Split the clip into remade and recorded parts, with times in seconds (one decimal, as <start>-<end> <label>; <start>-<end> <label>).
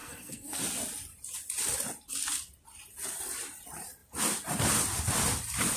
0.0-0.6 remade; 0.6-5.8 recorded